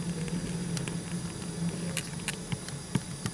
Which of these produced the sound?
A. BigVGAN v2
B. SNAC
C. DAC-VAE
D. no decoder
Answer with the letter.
D